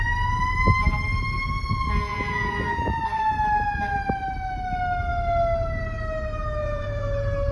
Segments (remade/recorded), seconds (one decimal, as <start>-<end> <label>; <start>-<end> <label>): 0.0-2.1 recorded; 2.1-3.0 remade; 3.0-6.6 recorded; 6.6-7.5 remade